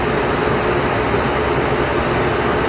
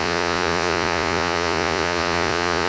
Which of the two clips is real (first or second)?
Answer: first